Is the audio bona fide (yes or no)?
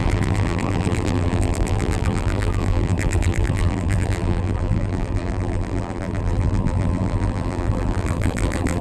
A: no